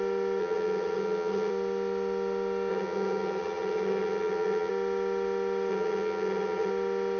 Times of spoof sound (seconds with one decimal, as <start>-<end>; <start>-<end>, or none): 0.4-1.5; 2.7-4.7; 5.7-6.7